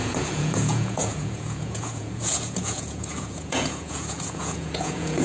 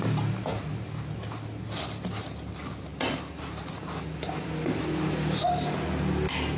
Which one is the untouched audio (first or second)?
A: second